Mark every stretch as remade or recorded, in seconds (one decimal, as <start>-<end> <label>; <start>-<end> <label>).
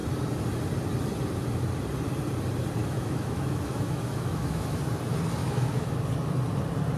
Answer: 0.0-2.8 recorded; 2.8-4.8 remade; 4.8-5.4 recorded; 5.4-6.0 remade; 6.0-7.0 recorded